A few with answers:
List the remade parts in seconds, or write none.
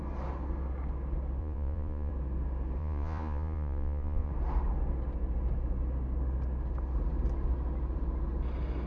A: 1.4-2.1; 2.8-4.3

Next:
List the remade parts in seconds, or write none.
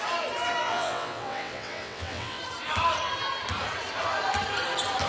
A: 0.6-2.4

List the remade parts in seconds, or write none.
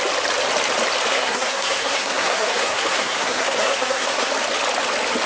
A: 1.1-4.3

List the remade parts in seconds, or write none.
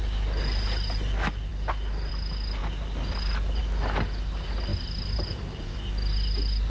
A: none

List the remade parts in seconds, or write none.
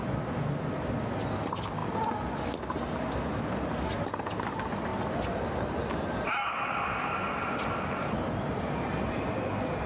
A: none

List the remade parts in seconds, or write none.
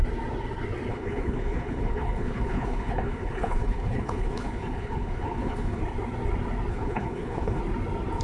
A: 0.9-5.8; 6.7-7.6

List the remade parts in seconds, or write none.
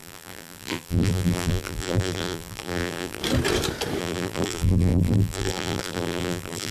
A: 0.0-3.2; 4.0-6.7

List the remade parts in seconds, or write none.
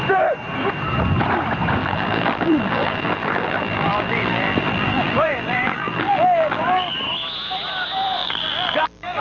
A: 1.8-6.9; 8.2-9.2